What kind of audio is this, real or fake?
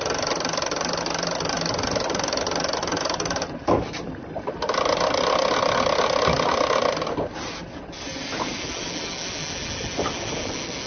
real